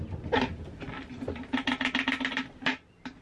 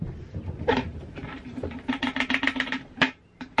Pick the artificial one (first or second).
second